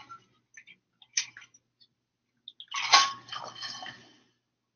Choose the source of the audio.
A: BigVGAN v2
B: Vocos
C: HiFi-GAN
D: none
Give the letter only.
D